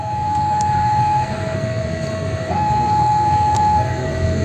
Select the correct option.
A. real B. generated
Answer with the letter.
B